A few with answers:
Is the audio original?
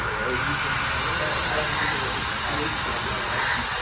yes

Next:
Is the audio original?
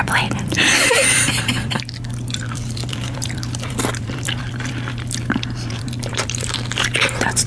no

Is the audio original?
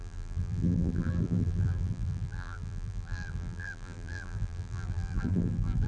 no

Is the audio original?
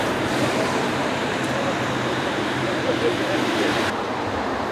no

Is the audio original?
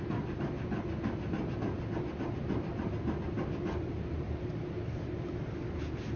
yes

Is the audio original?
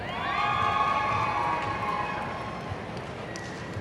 yes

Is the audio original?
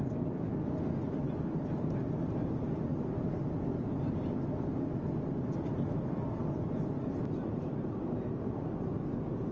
yes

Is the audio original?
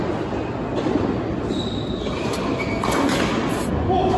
yes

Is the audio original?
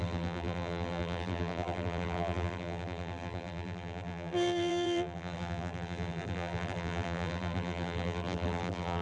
no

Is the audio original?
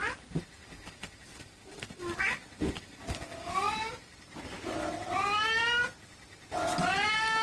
yes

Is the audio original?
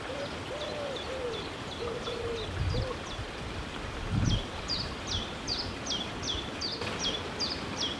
no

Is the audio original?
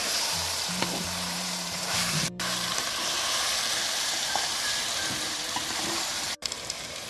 no